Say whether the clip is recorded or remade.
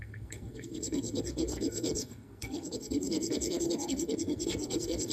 remade